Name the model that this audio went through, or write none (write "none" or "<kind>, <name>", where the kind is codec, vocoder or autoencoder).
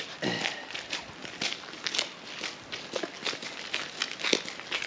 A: none